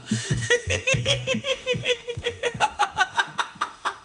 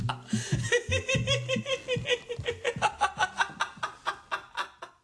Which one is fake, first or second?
first